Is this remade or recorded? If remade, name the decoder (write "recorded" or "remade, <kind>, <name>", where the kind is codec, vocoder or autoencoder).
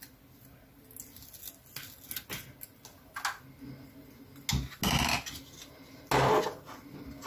recorded